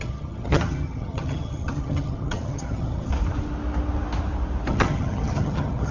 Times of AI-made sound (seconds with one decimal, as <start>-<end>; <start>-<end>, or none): 0.0-3.1; 4.7-5.9